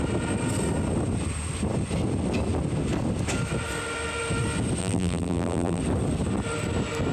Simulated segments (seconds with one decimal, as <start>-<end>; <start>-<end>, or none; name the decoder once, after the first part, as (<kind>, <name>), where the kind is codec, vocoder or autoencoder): 4.8-5.8 (vocoder, BigVGAN v2)